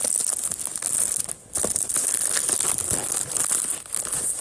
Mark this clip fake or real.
real